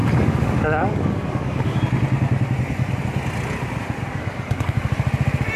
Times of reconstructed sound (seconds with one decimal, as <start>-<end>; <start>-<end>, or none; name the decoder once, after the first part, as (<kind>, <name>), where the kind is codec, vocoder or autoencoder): 0.0-1.8 (codec, DAC); 4.1-4.9